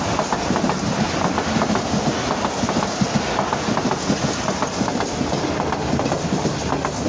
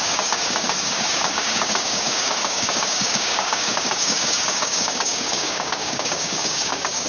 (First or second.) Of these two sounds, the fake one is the second